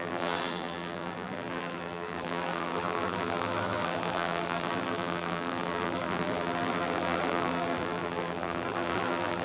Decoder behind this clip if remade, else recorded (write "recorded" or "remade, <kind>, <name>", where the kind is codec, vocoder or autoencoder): remade, vocoder, BigVGAN v2